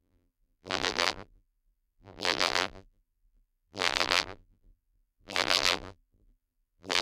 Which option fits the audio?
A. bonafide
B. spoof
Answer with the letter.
B